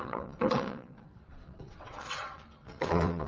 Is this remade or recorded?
remade